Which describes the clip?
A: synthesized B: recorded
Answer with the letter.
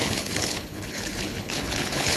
A